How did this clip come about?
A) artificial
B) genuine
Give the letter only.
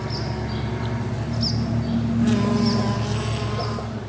B